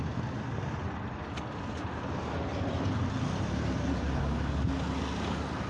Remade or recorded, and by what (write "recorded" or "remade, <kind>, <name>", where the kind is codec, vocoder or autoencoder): recorded